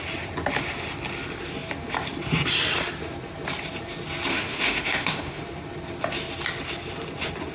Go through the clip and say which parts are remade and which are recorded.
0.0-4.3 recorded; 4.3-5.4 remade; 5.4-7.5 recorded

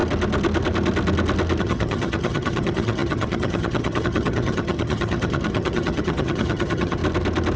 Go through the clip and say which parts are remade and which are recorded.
0.0-1.6 recorded; 1.6-7.0 remade; 7.0-7.6 recorded

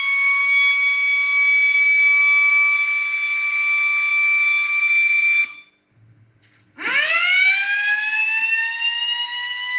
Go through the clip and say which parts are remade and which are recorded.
0.0-9.8 recorded

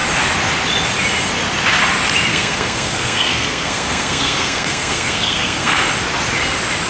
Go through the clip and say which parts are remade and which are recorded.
0.0-2.3 recorded; 2.3-5.9 remade; 5.9-6.9 recorded

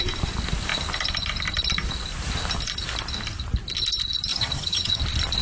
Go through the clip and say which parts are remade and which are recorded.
0.0-4.3 recorded; 4.3-5.0 remade; 5.0-5.4 recorded

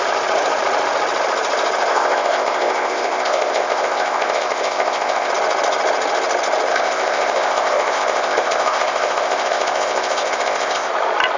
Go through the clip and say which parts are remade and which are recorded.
0.0-1.9 recorded; 1.9-5.3 remade; 5.3-6.7 recorded; 6.7-10.9 remade; 10.9-11.4 recorded

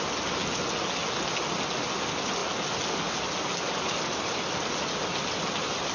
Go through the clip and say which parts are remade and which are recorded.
0.0-5.9 recorded

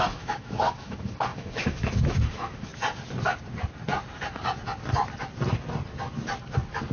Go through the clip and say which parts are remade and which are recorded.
0.0-2.7 remade; 2.7-6.9 recorded